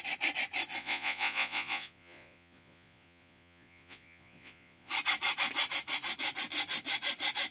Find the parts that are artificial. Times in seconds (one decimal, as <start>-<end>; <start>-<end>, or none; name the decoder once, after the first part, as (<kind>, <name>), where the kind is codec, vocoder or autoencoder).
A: 0.8-4.9 (vocoder, Vocos)